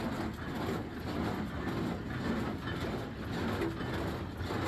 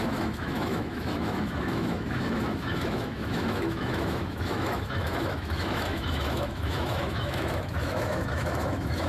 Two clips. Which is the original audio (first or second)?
first